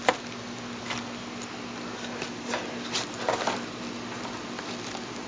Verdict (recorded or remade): recorded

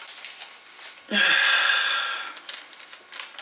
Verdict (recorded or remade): recorded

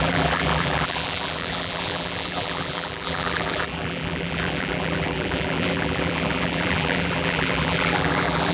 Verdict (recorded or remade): remade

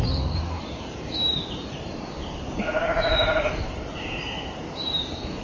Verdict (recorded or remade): remade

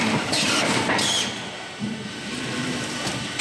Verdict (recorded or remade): remade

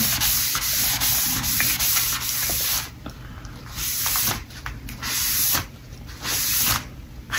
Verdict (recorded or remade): remade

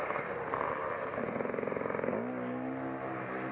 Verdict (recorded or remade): recorded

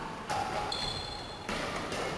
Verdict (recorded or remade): recorded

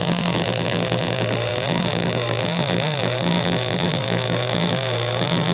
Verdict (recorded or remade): remade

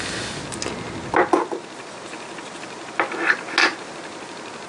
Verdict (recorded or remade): recorded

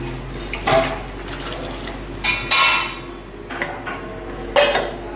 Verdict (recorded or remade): recorded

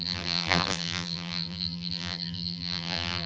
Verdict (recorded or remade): remade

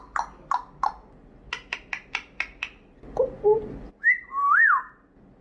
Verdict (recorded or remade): recorded